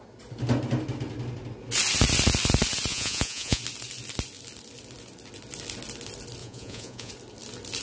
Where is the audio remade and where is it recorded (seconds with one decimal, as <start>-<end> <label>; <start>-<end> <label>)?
0.0-2.9 recorded; 2.9-3.6 remade; 3.6-6.4 recorded; 6.4-7.1 remade; 7.1-7.8 recorded